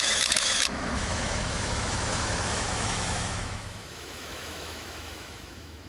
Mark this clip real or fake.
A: fake